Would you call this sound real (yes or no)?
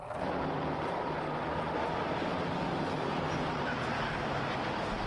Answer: yes